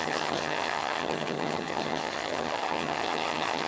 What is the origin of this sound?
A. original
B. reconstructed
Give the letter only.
B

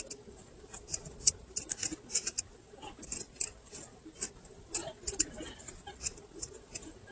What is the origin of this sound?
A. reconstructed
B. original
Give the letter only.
B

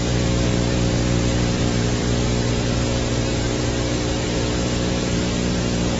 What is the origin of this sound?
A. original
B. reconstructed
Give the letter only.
B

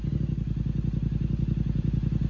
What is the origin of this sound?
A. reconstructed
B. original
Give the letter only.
B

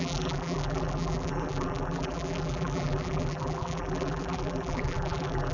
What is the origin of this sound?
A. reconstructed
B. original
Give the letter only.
A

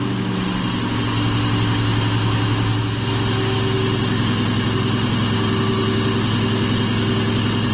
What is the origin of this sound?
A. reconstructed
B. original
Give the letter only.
B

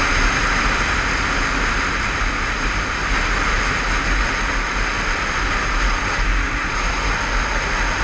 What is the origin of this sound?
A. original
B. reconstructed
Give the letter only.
A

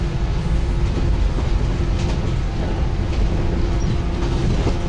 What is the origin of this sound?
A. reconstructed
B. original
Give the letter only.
B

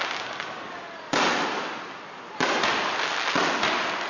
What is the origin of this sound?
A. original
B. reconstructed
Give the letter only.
A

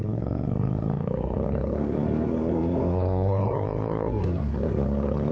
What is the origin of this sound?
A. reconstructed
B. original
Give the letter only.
A